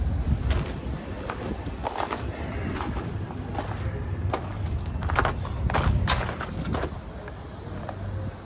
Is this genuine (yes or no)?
yes